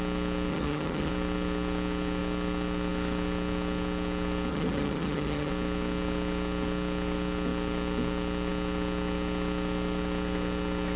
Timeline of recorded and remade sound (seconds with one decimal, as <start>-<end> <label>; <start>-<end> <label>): 0.0-0.5 recorded; 0.5-1.1 remade; 1.1-4.5 recorded; 4.5-5.5 remade; 5.5-11.0 recorded

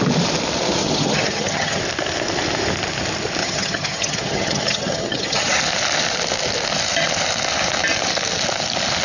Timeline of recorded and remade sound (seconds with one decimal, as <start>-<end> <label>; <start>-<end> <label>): 0.0-0.8 recorded; 0.8-1.8 remade; 1.8-3.4 recorded; 3.4-5.6 remade; 5.6-9.0 recorded